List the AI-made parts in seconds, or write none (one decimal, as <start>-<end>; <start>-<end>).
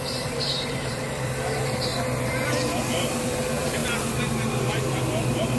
0.0-1.9; 3.2-5.6